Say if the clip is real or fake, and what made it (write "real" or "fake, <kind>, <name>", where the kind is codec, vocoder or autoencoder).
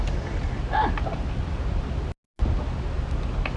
real